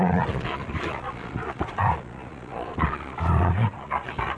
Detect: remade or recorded remade